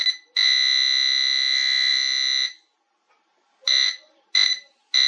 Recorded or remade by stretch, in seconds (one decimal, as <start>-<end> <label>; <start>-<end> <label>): 0.0-5.1 recorded